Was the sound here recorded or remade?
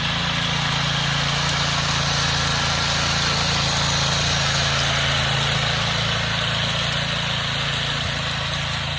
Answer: recorded